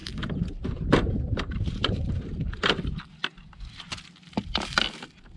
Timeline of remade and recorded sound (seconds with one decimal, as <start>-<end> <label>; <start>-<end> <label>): 0.0-1.7 recorded; 1.7-3.2 remade; 3.2-4.6 recorded; 4.6-5.4 remade

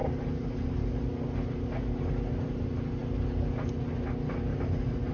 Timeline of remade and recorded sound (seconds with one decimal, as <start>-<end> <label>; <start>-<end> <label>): 0.0-1.0 remade; 1.0-4.5 recorded; 4.5-5.1 remade